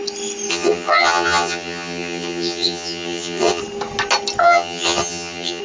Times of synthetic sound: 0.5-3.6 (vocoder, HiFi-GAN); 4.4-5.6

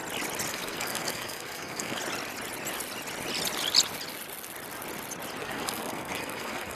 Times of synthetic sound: 0.5-2.0 (codec, SNAC); 5.4-6.8

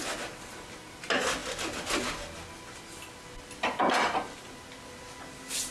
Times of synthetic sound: none

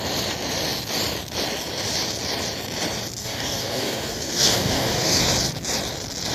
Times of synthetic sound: 3.2-5.2 (codec, DAC)